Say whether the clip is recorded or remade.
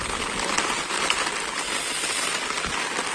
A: recorded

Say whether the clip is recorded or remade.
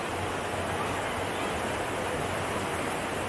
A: remade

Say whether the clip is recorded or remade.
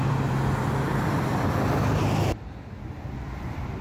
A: remade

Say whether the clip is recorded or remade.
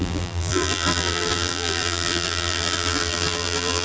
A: remade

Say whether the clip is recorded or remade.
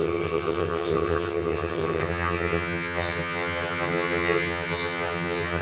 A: remade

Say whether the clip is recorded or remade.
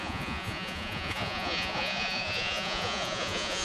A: remade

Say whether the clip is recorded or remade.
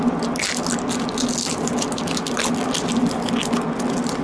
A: recorded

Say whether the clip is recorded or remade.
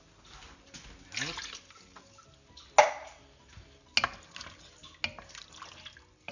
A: recorded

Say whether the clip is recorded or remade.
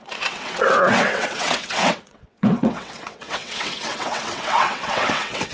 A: remade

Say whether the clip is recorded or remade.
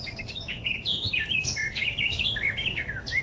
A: remade